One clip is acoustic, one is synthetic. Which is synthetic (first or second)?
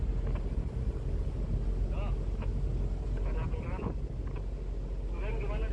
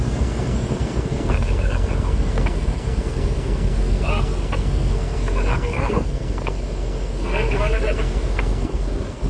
second